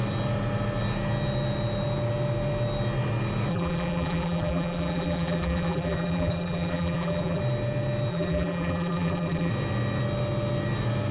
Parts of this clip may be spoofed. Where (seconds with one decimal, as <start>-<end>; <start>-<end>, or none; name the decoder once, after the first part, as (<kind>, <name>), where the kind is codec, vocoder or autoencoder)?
3.5-7.4 (vocoder, BigVGAN v2); 8.1-9.5